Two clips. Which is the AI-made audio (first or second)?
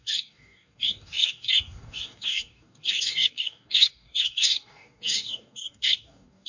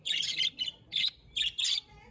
first